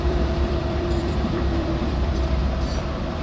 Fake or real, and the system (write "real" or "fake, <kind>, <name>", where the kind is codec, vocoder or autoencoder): fake, vocoder, BigVGAN v2